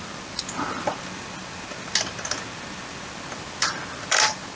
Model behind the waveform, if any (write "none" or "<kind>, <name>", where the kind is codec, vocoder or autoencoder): none